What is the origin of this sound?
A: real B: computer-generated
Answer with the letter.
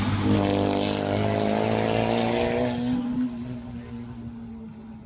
A